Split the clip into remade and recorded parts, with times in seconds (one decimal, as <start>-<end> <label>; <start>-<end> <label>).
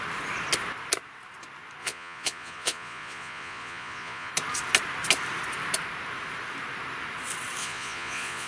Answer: 0.0-1.8 recorded; 1.8-4.3 remade; 4.3-7.6 recorded; 7.6-8.5 remade